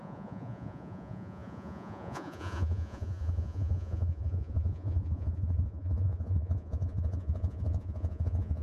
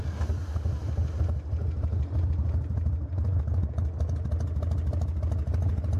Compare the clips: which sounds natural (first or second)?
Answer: second